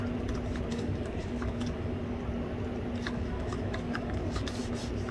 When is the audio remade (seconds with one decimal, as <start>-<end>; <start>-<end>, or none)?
0.7-2.2; 3.0-4.6